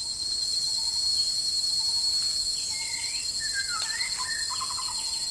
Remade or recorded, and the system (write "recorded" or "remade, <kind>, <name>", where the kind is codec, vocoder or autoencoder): recorded